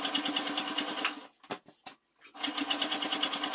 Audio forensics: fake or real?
real